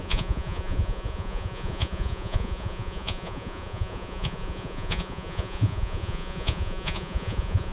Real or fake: fake